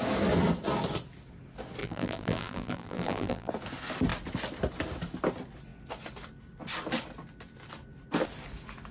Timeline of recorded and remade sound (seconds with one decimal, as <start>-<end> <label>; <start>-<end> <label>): 0.0-1.8 recorded; 1.8-3.5 remade; 3.5-8.9 recorded